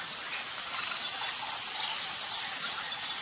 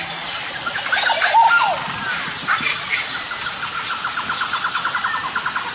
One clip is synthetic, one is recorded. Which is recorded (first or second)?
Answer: second